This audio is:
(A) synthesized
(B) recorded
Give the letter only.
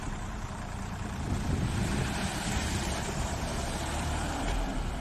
A